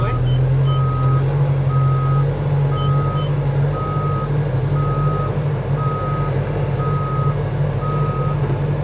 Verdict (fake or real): real